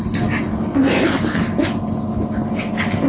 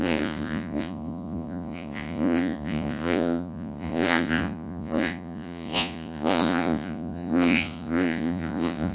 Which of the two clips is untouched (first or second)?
first